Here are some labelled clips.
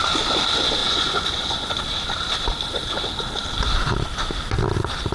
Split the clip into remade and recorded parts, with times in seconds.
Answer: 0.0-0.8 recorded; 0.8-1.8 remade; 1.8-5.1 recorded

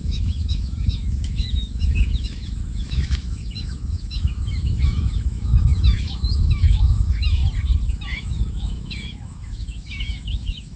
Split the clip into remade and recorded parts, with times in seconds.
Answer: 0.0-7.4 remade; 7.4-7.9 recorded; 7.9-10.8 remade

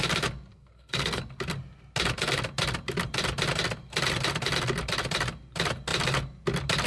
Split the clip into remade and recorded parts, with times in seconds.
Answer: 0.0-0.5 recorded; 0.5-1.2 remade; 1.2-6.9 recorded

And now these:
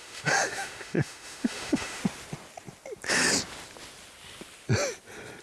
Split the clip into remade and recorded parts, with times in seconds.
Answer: 0.0-2.0 remade; 2.0-5.4 recorded

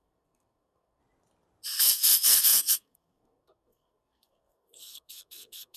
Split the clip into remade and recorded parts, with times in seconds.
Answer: 0.0-1.0 remade; 1.0-1.8 recorded; 1.8-5.8 remade

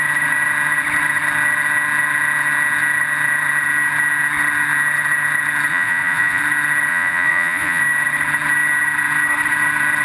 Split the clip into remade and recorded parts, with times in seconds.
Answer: 0.0-5.7 recorded; 5.7-6.4 remade; 6.4-6.9 recorded; 6.9-7.8 remade; 7.8-10.0 recorded